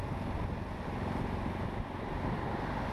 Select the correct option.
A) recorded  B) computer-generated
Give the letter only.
A